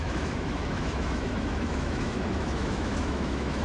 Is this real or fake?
fake